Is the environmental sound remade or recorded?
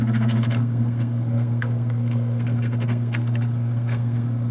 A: remade